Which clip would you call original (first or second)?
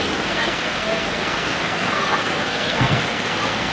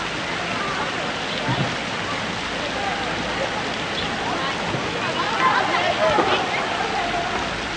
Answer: second